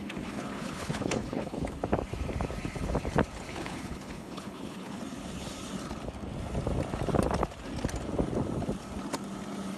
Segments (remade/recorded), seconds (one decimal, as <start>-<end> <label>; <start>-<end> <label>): 0.0-1.8 remade; 1.8-3.5 recorded; 3.5-5.0 remade; 5.0-9.8 recorded